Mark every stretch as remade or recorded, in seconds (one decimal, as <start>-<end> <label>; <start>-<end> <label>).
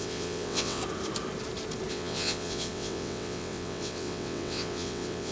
0.0-0.8 remade; 0.8-1.9 recorded; 1.9-5.3 remade